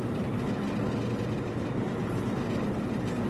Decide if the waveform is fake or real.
real